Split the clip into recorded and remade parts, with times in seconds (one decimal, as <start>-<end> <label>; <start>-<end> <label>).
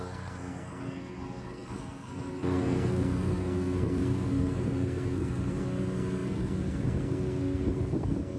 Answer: 0.0-8.4 remade